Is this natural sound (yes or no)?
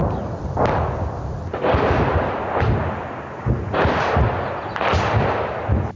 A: yes